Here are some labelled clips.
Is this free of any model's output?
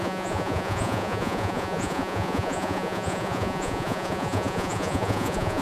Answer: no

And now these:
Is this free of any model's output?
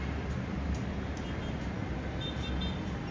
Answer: yes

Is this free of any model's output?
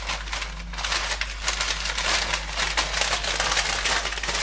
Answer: yes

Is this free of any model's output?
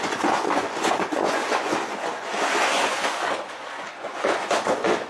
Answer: no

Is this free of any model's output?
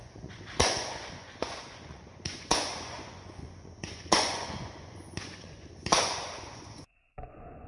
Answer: no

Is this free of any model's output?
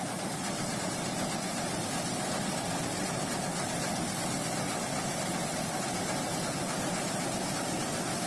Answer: yes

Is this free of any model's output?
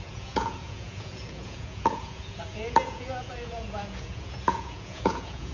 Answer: no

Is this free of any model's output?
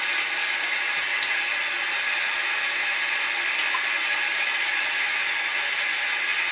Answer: yes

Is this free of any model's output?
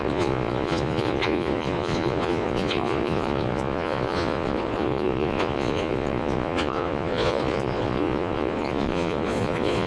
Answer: no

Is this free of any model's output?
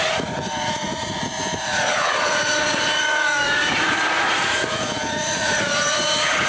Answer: no